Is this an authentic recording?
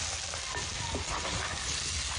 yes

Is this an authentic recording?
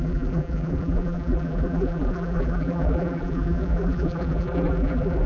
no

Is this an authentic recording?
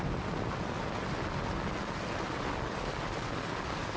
yes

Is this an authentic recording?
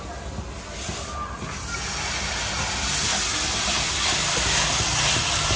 yes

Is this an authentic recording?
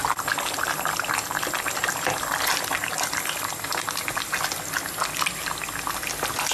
yes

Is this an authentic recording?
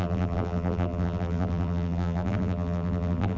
no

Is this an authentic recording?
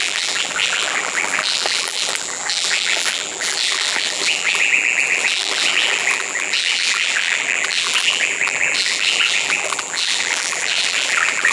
no